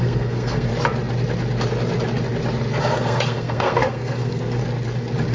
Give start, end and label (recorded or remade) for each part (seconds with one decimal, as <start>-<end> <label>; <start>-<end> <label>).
0.0-0.7 remade; 0.7-2.8 recorded; 2.8-4.6 remade; 4.6-5.3 recorded